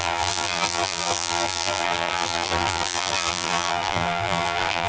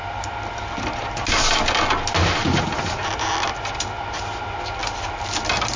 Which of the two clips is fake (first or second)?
first